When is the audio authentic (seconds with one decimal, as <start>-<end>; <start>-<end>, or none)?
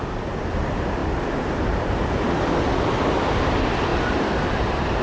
0.0-1.0; 2.2-3.9